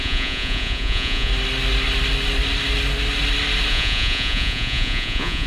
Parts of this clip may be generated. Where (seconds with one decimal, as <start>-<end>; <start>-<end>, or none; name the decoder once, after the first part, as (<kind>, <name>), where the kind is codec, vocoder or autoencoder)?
0.0-1.3 (vocoder, Vocos); 3.7-5.5